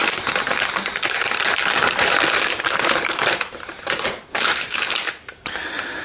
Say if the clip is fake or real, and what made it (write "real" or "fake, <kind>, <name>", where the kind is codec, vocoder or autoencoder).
fake, vocoder, BigVGAN v2